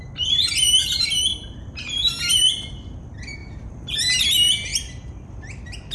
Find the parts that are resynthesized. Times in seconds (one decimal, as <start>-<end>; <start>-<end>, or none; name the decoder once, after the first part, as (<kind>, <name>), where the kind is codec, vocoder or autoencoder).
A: 1.3-2.4 (vocoder, BigVGAN v2); 3.4-4.2